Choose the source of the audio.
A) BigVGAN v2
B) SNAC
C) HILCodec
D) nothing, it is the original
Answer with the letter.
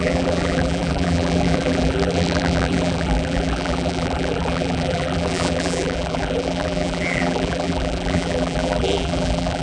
A